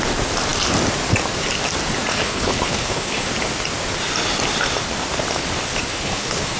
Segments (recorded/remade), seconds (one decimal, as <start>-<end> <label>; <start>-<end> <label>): 0.0-2.1 recorded; 2.1-3.3 remade; 3.3-5.9 recorded; 5.9-6.6 remade